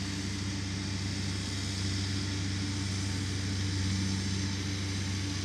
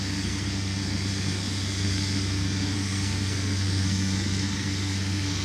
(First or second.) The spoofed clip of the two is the second